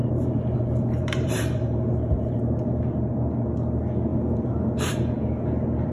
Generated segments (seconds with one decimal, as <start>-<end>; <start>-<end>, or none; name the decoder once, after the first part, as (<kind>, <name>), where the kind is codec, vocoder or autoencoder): 0.0-2.8 (vocoder, BigVGAN v2); 4.1-4.9